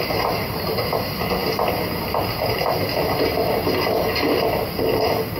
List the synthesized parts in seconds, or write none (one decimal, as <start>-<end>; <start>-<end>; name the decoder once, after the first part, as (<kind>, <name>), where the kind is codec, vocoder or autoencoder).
none